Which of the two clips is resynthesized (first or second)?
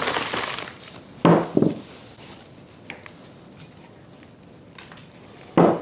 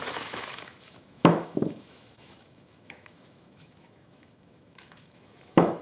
second